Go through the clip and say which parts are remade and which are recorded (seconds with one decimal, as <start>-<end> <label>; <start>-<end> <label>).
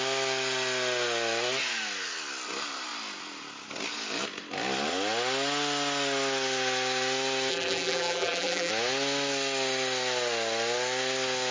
0.0-7.5 recorded; 7.5-8.7 remade; 8.7-11.5 recorded